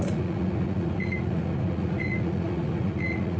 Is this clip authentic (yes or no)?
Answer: no